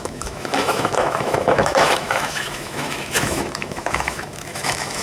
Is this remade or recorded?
remade